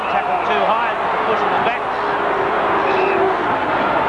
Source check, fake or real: real